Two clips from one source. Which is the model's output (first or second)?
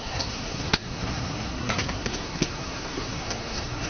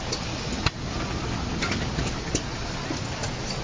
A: first